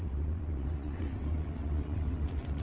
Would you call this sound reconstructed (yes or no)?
yes